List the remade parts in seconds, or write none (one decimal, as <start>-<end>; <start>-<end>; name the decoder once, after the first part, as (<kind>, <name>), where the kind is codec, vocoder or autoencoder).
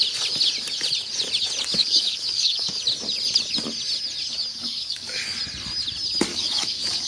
1.8-2.8 (codec, DAC); 4.5-5.4; 6.3-7.1